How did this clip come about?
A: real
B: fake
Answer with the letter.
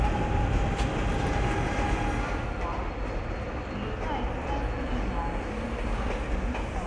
A